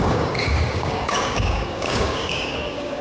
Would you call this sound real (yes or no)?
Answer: no